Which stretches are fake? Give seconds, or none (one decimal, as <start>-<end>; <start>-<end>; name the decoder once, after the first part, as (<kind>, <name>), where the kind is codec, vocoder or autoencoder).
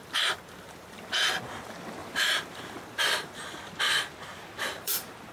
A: 0.0-1.1 (vocoder, BigVGAN v2); 2.0-3.4; 4.4-5.3